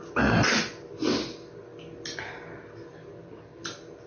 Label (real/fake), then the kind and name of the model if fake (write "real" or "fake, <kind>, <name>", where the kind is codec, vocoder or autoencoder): real